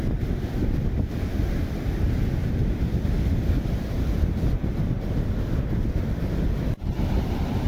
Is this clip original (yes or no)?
yes